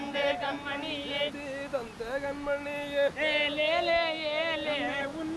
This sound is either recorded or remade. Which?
recorded